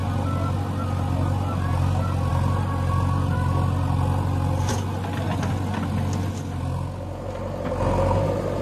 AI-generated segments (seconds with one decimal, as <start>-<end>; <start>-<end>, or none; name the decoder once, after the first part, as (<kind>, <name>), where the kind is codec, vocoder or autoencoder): none